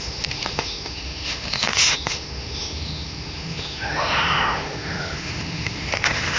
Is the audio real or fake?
fake